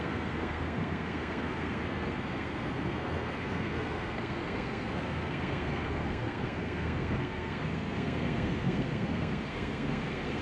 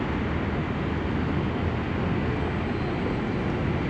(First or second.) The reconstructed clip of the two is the first